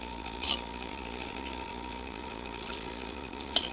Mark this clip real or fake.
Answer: fake